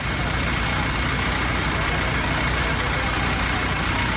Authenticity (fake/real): real